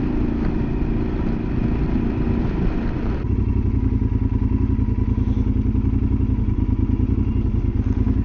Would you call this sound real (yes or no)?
yes